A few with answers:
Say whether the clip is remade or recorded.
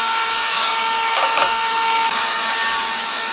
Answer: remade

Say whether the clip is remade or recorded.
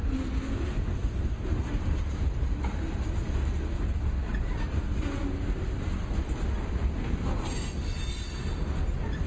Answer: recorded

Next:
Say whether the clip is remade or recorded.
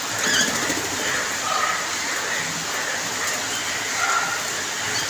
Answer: recorded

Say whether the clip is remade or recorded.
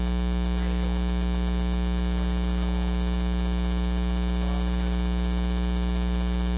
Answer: recorded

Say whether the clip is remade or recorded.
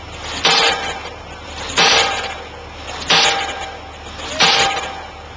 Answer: recorded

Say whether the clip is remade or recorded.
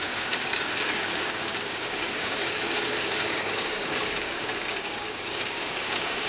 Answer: remade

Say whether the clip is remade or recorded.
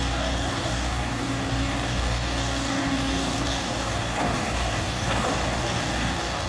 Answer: remade